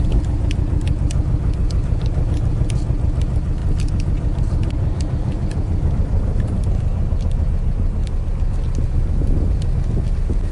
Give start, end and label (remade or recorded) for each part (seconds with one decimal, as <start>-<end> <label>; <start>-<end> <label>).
0.0-10.5 recorded